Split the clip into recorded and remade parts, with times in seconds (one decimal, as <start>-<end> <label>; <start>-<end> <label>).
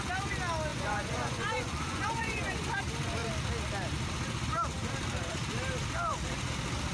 0.0-0.7 recorded; 0.7-2.8 remade; 2.8-6.9 recorded